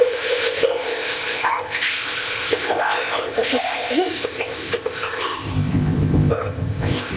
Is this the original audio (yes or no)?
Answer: no